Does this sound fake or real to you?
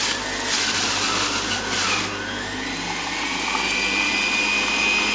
real